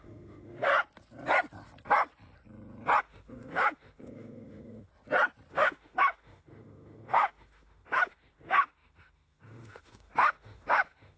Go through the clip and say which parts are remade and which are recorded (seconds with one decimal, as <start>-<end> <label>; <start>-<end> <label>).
0.0-0.7 remade; 0.7-3.0 recorded; 3.0-4.9 remade; 4.9-5.5 recorded; 5.5-11.2 remade